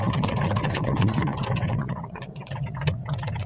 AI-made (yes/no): yes